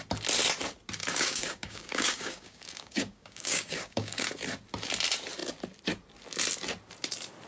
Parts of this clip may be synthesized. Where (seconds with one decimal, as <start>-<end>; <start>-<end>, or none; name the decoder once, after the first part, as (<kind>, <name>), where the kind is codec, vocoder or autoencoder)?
1.0-4.3 (codec, DAC)